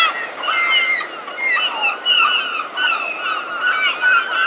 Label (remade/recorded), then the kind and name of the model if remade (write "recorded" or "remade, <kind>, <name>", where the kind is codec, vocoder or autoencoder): recorded